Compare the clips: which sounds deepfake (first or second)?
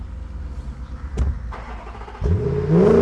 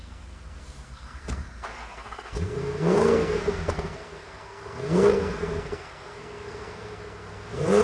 second